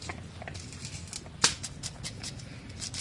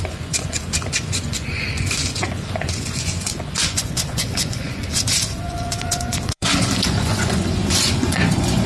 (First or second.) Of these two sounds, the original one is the first